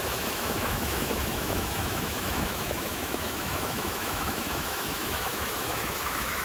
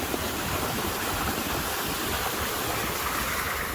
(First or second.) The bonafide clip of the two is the second